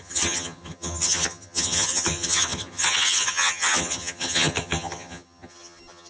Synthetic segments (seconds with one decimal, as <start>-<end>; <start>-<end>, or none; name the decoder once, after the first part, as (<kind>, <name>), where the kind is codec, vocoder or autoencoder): 0.0-6.1 (vocoder, HiFi-GAN)